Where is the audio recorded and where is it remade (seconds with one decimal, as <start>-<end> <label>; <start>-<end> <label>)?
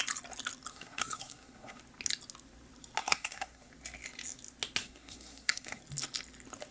0.0-0.7 recorded; 0.7-1.8 remade; 1.8-3.0 recorded; 3.0-3.7 remade; 3.7-4.8 recorded; 4.8-5.8 remade; 5.8-6.7 recorded